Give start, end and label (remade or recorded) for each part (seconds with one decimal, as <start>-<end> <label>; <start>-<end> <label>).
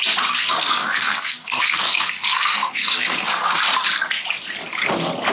0.0-0.4 recorded; 0.4-3.6 remade; 3.6-5.3 recorded